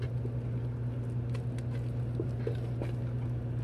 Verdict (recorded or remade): recorded